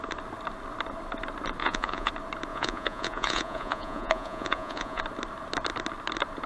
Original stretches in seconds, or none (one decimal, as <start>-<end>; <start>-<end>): 0.0-1.6; 2.1-2.5; 5.0-6.5